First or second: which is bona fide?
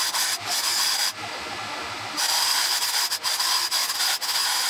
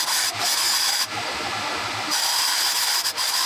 first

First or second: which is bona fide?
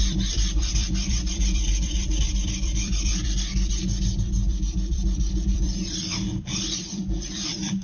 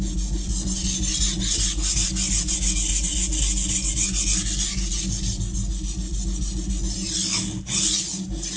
second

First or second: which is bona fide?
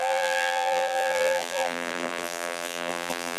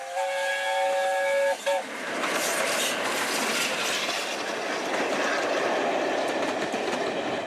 second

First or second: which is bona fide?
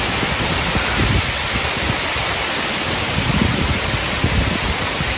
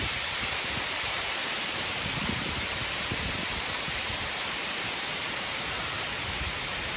first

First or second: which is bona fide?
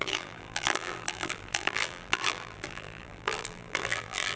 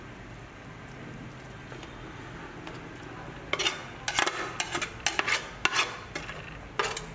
second